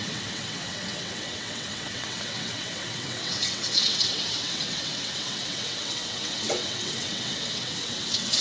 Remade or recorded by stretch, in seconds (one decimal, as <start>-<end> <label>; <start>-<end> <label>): 0.0-8.4 remade